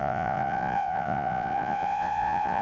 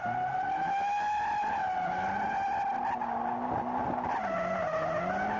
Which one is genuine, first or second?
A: second